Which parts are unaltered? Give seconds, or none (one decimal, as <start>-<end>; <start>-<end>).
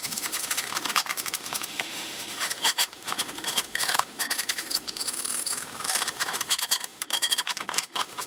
none